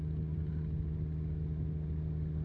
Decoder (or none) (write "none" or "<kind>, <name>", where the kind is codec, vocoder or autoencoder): none